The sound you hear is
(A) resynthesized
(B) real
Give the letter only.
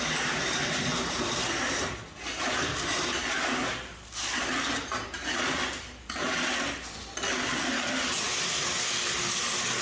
B